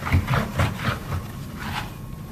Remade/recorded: recorded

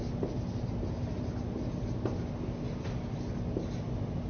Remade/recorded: recorded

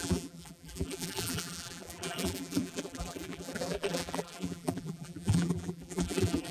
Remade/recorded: remade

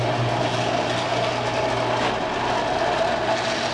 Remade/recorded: recorded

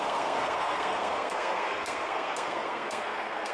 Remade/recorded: remade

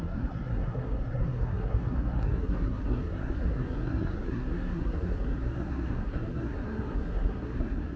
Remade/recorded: remade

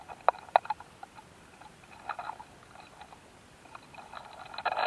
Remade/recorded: recorded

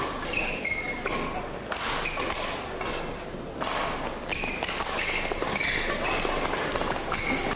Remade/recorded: recorded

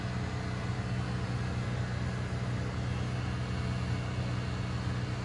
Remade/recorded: recorded